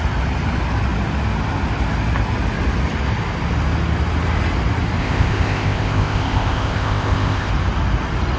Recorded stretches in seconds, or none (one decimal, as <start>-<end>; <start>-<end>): 0.0-5.0; 7.5-8.4